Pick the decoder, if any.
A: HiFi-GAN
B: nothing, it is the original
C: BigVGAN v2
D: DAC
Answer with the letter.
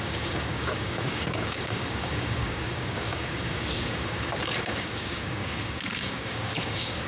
D